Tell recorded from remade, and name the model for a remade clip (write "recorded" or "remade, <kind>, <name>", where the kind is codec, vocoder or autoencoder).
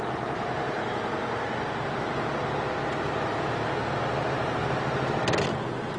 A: remade, vocoder, BigVGAN v2